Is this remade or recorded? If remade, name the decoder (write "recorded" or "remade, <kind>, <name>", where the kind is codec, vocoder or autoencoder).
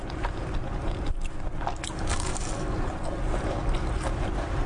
recorded